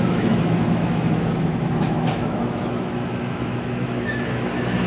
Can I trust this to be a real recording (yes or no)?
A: no